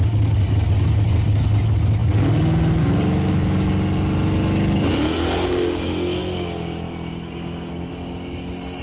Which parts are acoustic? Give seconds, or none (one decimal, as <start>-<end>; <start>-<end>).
0.0-8.8